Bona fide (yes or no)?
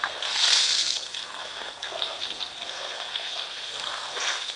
no